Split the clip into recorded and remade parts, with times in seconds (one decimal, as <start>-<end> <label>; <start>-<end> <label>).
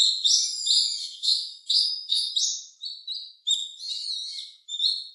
0.0-1.0 recorded; 1.0-2.3 remade; 2.3-5.1 recorded